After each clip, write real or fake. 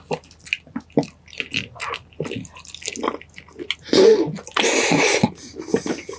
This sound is real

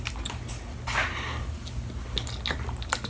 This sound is real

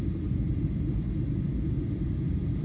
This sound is real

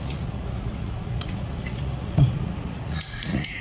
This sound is fake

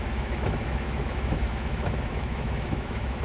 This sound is fake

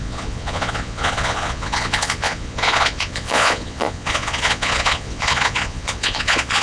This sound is fake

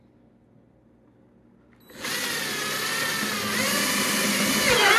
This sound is real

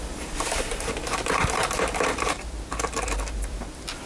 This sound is fake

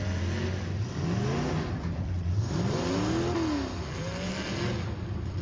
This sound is real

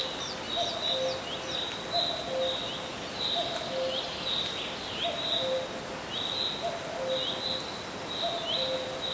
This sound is real